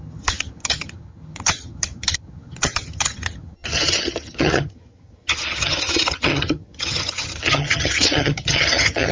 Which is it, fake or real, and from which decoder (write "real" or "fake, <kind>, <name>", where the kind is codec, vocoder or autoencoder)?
fake, vocoder, HiFi-GAN